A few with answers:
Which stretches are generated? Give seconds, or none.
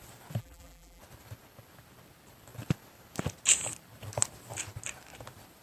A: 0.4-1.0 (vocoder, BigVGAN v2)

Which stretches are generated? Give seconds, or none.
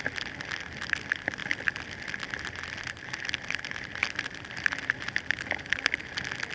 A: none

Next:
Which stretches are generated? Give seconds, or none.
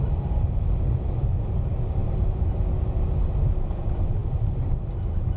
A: 2.0-2.6 (vocoder, BigVGAN v2); 4.2-4.7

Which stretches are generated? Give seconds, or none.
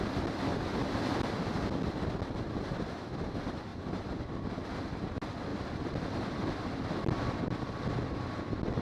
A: 0.5-1.9 (vocoder, BigVGAN v2); 3.7-4.3; 5.5-6.2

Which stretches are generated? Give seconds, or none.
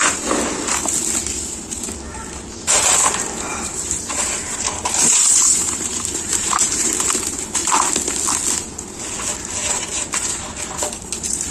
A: 3.5-7.2 (vocoder, BigVGAN v2); 9.6-10.4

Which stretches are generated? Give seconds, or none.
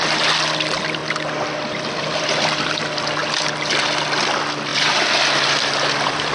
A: 1.0-2.8 (vocoder, BigVGAN v2); 3.2-3.8; 4.7-6.3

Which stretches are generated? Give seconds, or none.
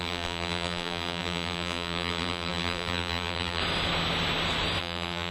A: 0.0-3.6 (vocoder, BigVGAN v2); 4.8-5.3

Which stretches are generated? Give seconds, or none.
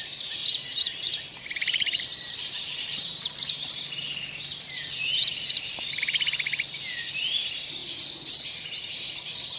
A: 0.4-3.3 (vocoder, BigVGAN v2); 5.2-6.0